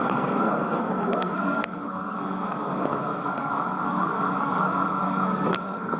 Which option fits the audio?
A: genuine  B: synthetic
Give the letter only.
B